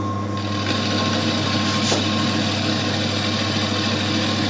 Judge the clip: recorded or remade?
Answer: recorded